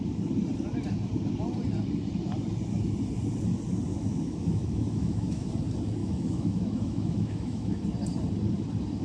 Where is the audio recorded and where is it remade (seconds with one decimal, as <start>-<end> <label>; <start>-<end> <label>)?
0.0-3.9 recorded; 3.9-5.5 remade; 5.5-6.0 recorded; 6.0-7.8 remade; 7.8-9.0 recorded